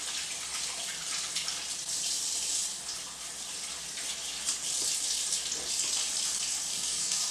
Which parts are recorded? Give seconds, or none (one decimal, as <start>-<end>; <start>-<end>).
0.0-6.7